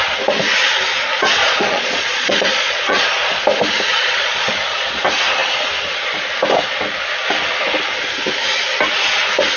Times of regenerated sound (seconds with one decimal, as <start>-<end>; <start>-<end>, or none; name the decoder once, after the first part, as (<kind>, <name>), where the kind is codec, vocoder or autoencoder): 1.4-3.4 (vocoder, Vocos); 3.9-5.0